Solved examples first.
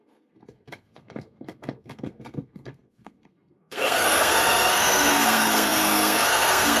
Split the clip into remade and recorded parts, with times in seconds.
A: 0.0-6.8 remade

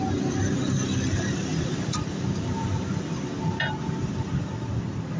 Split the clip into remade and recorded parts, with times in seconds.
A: 0.0-5.2 recorded

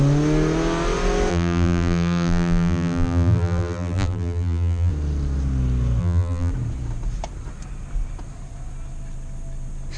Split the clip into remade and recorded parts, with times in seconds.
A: 0.0-1.3 recorded; 1.3-4.9 remade; 4.9-6.0 recorded; 6.0-6.5 remade; 6.5-10.0 recorded

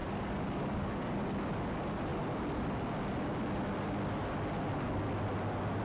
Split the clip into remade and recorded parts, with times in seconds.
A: 0.0-1.2 remade; 1.2-5.8 recorded

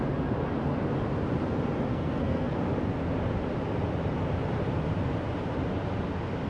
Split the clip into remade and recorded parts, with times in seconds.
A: 0.0-1.9 recorded; 1.9-2.6 remade; 2.6-6.5 recorded

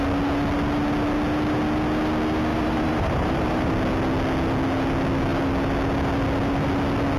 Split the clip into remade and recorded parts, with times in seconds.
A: 0.0-2.5 recorded; 2.5-3.7 remade; 3.7-7.2 recorded

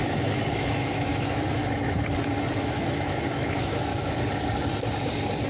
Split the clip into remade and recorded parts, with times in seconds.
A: 0.0-1.6 remade; 1.6-2.6 recorded; 2.6-3.9 remade; 3.9-5.5 recorded